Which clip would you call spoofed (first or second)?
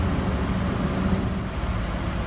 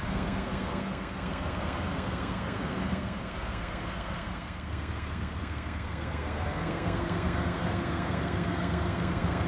second